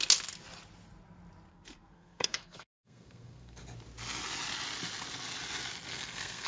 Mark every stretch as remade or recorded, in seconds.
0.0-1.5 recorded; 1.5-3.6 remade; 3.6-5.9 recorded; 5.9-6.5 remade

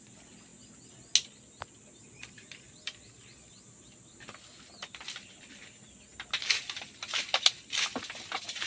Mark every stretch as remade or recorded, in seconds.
0.0-8.7 recorded

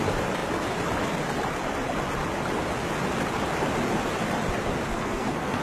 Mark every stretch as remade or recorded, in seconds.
0.0-4.9 recorded; 4.9-5.6 remade

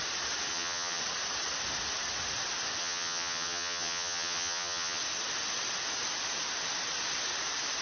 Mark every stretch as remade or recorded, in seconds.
0.0-0.5 recorded; 0.5-1.0 remade; 1.0-2.8 recorded; 2.8-5.0 remade; 5.0-7.8 recorded